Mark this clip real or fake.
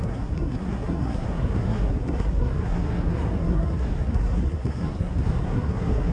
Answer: fake